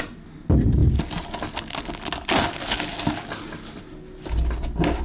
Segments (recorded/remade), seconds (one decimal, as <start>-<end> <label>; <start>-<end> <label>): 0.0-5.0 recorded